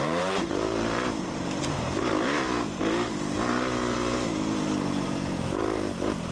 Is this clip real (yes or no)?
no